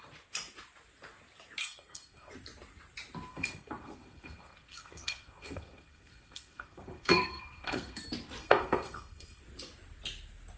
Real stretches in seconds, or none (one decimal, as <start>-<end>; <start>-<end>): 0.0-1.6; 2.3-3.3; 8.0-8.4; 9.4-10.6